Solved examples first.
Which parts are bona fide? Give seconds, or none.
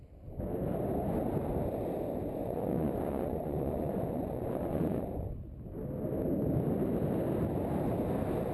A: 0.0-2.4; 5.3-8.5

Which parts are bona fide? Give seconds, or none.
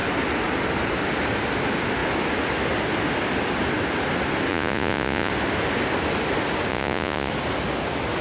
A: 0.0-4.5; 5.3-6.7; 7.3-8.2